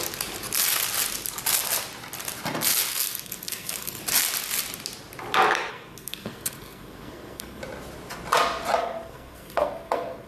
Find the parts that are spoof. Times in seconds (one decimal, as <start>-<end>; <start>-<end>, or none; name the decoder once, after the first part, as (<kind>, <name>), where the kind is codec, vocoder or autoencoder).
2.9-4.0 (codec, SNAC); 5.7-7.6; 8.8-10.3